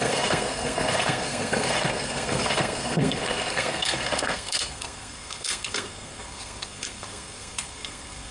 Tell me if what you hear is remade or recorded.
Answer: remade